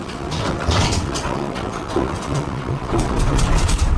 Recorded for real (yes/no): no